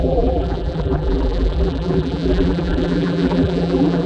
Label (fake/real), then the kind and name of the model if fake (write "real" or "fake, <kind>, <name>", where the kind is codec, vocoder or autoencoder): fake, vocoder, BigVGAN v2